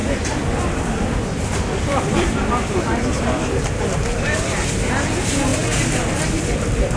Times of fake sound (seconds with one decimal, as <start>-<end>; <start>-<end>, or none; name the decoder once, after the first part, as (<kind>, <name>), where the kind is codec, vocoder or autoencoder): 0.0-5.5 (vocoder, BigVGAN v2); 6.3-7.0